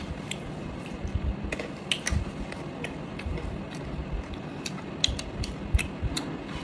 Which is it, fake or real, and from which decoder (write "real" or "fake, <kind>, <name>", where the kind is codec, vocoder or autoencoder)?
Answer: real